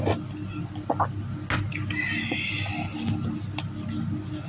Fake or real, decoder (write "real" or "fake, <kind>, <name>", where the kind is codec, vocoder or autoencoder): real